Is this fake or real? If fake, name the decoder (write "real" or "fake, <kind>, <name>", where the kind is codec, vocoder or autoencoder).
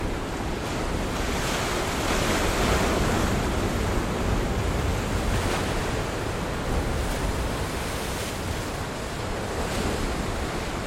real